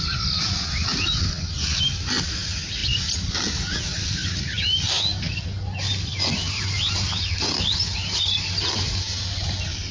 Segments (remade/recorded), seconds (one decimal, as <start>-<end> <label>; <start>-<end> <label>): 0.0-9.9 recorded